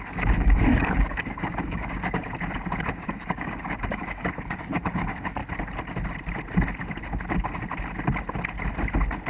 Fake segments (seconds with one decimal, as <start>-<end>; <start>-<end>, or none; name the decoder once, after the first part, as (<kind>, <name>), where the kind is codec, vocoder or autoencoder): 0.0-2.2 (codec, DAC); 2.8-5.4